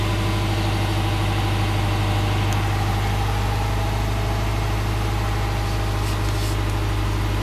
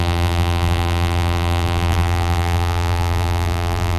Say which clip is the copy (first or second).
second